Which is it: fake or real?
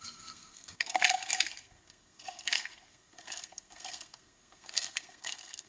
fake